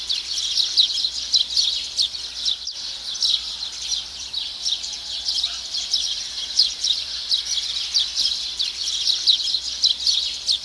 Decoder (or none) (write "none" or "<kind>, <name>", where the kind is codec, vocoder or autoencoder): vocoder, BigVGAN v2